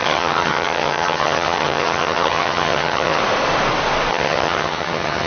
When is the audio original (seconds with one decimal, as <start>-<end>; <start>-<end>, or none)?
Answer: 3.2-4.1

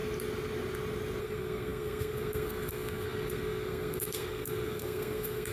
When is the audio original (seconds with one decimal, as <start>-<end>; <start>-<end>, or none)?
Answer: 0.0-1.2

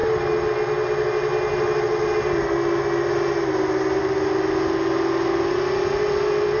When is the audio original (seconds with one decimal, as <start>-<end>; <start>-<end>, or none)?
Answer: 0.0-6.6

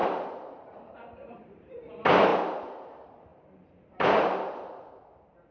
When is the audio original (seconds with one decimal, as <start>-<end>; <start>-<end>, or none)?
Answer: 1.8-3.3; 4.9-5.5

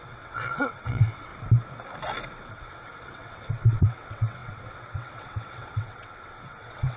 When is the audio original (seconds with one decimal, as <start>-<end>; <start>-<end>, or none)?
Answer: 1.3-2.5

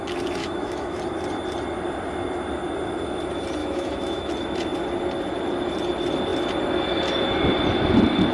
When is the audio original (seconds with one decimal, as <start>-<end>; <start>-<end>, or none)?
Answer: 0.0-0.4; 1.0-3.6; 4.3-8.3

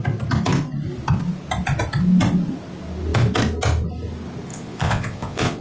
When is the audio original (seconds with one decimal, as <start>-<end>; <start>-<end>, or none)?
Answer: 0.0-4.5

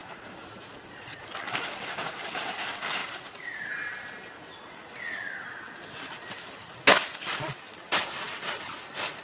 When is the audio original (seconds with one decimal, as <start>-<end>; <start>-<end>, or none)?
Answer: 1.3-3.0; 3.6-9.2